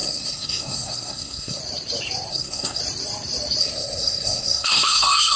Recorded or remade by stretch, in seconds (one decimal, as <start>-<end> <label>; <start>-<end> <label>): 0.0-1.6 remade; 1.6-2.3 recorded; 2.3-2.8 remade; 2.8-3.6 recorded; 3.6-5.4 remade